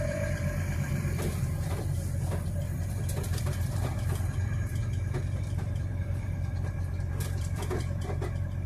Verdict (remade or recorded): remade